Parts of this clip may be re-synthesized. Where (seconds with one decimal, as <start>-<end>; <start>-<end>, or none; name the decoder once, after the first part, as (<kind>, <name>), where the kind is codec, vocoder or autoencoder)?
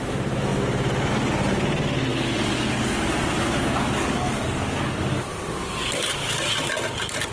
2.1-6.5 (codec, DAC)